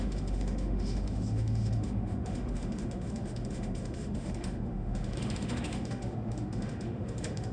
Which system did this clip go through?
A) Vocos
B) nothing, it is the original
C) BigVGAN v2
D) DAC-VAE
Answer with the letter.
D